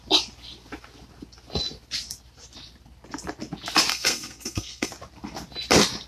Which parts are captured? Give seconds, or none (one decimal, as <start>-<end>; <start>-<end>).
0.0-3.9; 4.9-6.1